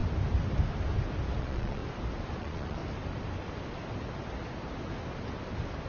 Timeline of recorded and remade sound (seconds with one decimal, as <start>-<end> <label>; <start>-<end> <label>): 0.0-1.4 recorded; 1.4-1.8 remade; 1.8-2.4 recorded; 2.4-2.8 remade; 2.8-5.9 recorded